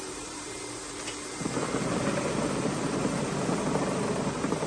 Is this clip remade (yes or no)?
yes